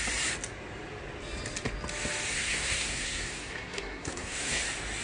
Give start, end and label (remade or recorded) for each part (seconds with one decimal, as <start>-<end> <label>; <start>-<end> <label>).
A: 0.0-2.3 recorded; 2.3-4.6 remade; 4.6-5.0 recorded